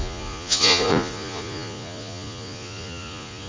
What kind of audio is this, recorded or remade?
remade